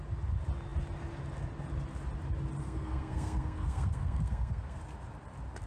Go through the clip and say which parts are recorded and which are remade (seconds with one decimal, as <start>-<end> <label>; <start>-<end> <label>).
0.0-2.6 recorded; 2.6-4.8 remade; 4.8-5.7 recorded